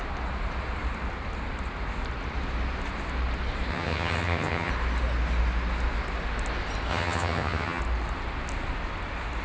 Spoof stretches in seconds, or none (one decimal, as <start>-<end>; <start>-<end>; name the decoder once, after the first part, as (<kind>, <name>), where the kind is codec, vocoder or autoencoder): 3.7-4.7 (vocoder, HiFi-GAN); 6.9-7.8

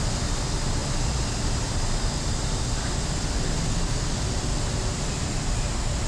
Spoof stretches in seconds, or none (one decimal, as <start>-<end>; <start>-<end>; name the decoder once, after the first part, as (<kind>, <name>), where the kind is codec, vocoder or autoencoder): none

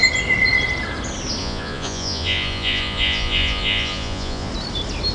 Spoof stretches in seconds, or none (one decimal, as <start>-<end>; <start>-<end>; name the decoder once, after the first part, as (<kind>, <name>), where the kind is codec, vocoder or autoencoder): 1.4-4.5 (vocoder, Vocos)

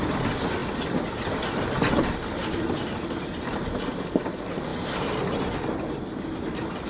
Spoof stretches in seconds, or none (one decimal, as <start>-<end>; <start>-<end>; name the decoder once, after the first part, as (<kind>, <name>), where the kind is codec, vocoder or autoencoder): none

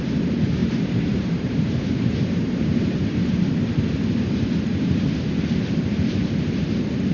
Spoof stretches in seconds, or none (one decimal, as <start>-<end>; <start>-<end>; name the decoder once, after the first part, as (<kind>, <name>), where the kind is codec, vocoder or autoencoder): 0.6-3.5 (vocoder, BigVGAN v2); 4.7-5.2

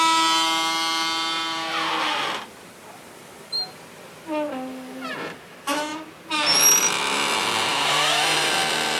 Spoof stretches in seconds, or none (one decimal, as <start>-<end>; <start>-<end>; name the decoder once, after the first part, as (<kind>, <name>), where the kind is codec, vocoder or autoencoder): 7.7-9.0 (vocoder, BigVGAN v2)

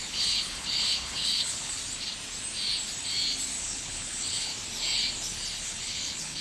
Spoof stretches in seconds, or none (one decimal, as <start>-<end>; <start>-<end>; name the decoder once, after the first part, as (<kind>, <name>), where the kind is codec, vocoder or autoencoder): 0.0-1.8 (codec, HILCodec); 3.6-4.5; 5.6-6.4

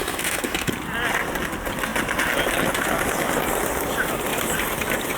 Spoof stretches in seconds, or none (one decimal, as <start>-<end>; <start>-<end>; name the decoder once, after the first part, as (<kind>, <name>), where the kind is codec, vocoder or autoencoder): 0.0-0.7 (autoencoder, DAC-VAE)